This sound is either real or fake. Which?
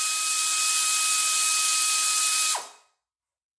real